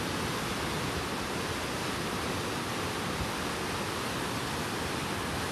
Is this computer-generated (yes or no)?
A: no